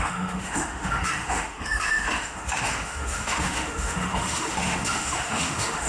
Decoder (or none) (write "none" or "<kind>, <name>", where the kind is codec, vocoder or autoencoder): autoencoder, DAC-VAE